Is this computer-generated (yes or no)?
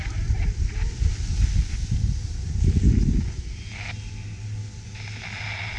no